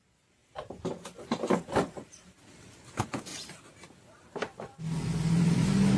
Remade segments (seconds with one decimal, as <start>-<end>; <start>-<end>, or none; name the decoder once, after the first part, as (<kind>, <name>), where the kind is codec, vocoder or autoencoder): none